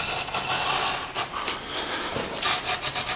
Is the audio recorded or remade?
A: recorded